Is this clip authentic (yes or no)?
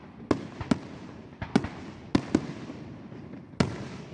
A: yes